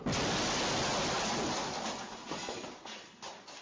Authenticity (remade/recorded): recorded